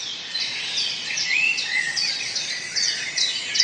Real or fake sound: fake